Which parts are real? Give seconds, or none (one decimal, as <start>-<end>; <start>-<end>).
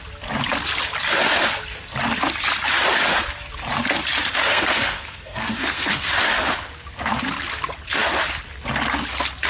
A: 0.0-4.5; 6.1-9.5